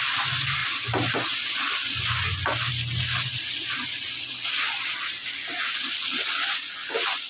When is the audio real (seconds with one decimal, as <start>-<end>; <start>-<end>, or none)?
0.0-7.3